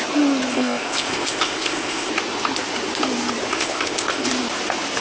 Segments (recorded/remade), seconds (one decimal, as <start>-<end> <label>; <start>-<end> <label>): 0.0-0.5 recorded; 0.5-2.1 remade; 2.1-3.5 recorded; 3.5-4.3 remade; 4.3-5.0 recorded

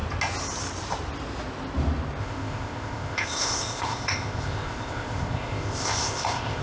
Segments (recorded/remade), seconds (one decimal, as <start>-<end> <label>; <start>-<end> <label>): 0.0-2.2 recorded; 2.2-6.6 remade

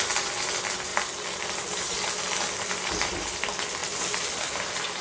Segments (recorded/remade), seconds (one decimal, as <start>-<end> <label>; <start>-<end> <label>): 0.0-5.0 recorded

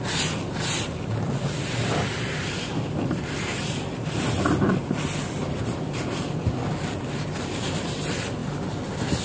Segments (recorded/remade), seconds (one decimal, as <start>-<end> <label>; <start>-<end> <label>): 0.0-9.2 recorded

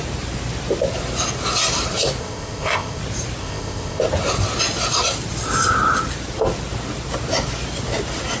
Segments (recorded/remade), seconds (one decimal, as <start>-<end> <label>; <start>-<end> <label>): 0.0-2.2 recorded; 2.2-3.0 remade; 3.0-3.4 recorded; 3.4-4.0 remade; 4.0-8.4 recorded

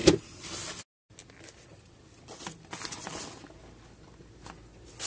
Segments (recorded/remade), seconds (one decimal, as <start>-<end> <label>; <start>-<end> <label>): 0.0-5.1 recorded

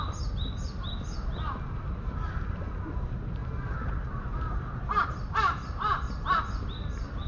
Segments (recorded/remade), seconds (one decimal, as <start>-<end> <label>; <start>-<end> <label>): 0.0-7.3 recorded